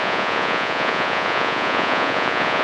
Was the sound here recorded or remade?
remade